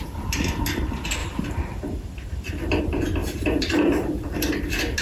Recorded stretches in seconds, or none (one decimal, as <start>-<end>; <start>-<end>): 0.0-1.2; 2.8-3.2; 4.5-5.0

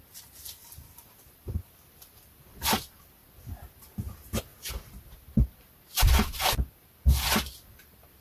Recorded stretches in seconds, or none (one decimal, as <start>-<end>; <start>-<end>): 0.0-0.6; 3.0-8.2

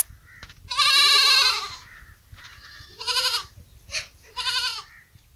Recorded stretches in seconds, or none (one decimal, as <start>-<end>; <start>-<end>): 0.0-5.4

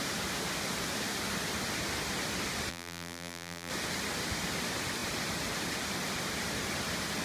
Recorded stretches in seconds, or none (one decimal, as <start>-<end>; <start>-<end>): 0.0-2.7; 3.7-7.2

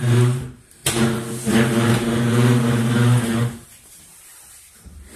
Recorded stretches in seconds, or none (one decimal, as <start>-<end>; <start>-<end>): none